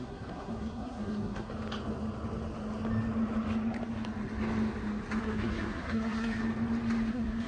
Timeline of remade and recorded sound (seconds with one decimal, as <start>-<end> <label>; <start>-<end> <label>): 0.0-1.5 remade; 1.5-5.2 recorded; 5.2-6.4 remade; 6.4-7.1 recorded; 7.1-7.5 remade